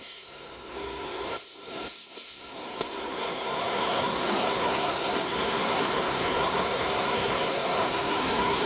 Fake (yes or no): yes